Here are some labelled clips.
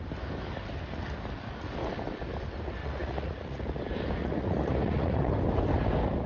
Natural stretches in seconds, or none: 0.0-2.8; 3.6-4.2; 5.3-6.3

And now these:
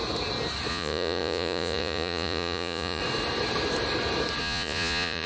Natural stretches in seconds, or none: 0.0-0.7; 3.0-4.4

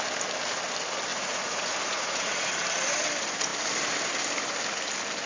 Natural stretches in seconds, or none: 0.0-1.1; 2.5-5.3

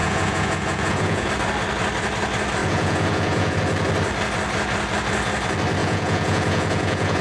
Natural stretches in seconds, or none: 1.3-2.6; 3.6-5.8

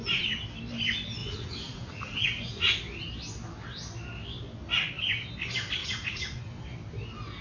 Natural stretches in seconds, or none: 0.0-1.2; 2.7-5.8; 6.5-7.4

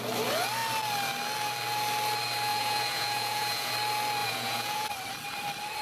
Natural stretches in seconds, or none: 0.0-2.5; 3.7-4.2; 4.9-5.8

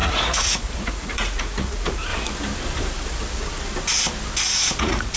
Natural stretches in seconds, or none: 2.1-4.8

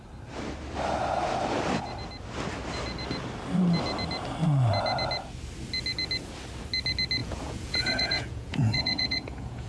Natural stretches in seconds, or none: 0.0-7.2